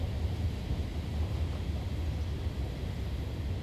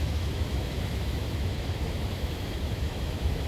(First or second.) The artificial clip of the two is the second